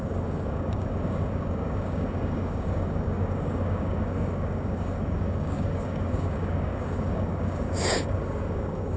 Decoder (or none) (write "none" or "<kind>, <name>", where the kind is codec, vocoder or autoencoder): codec, DAC